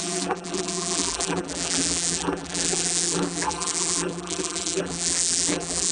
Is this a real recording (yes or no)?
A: no